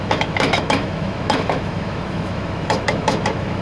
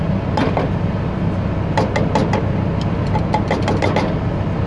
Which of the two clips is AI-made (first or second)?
first